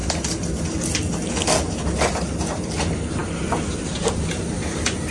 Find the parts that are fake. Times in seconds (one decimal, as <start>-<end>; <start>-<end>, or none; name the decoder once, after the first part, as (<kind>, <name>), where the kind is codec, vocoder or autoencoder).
none

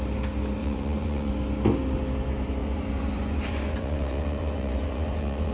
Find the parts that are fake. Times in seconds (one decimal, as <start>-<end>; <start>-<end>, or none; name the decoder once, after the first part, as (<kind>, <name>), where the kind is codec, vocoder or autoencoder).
0.6-1.3 (vocoder, Vocos); 2.6-5.5

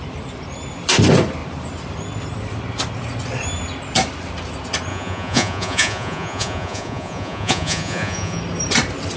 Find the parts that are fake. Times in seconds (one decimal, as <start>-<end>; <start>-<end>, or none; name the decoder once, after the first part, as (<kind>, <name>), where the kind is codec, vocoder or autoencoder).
4.9-8.4 (vocoder, Vocos)